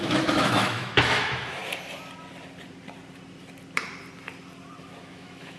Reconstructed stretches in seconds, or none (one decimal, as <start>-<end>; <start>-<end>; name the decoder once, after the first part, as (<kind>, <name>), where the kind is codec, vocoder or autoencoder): 0.0-1.6 (autoencoder, DAC-VAE); 5.0-5.6